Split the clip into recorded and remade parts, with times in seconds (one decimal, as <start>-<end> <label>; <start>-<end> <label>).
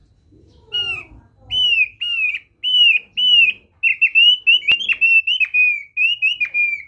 0.0-6.9 recorded